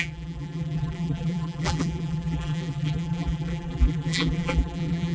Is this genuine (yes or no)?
no